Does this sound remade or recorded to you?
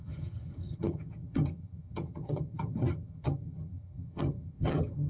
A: remade